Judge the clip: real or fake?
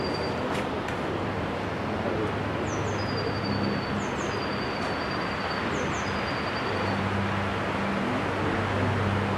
real